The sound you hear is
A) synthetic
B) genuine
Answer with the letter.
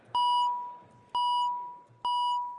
B